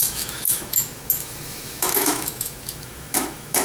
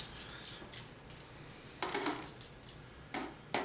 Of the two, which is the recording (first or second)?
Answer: second